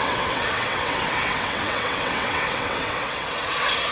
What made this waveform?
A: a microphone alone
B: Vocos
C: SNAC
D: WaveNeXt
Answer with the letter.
D